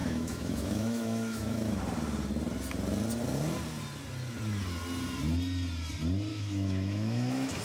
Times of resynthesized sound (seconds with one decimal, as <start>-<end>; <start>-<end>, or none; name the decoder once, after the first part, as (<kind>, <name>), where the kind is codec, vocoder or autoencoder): 0.0-1.8 (autoencoder, DAC-VAE); 6.3-7.6